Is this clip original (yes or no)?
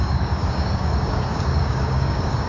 no